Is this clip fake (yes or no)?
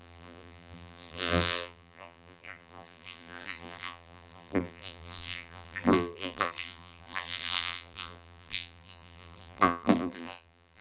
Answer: yes